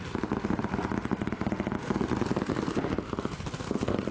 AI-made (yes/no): no